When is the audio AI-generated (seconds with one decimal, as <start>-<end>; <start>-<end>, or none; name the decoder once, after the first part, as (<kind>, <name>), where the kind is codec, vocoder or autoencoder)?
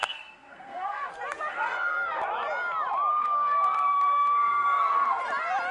0.0-1.1 (codec, SNAC); 1.5-2.2; 3.1-5.2